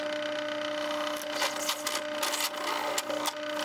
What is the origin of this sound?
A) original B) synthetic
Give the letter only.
A